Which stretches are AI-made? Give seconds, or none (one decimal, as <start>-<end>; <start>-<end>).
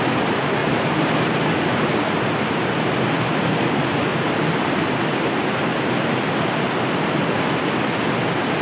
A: 0.6-1.5; 4.1-5.0